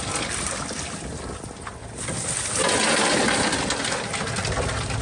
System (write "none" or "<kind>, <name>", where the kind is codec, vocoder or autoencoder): none